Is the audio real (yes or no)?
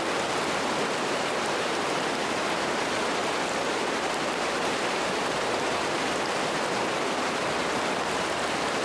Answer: yes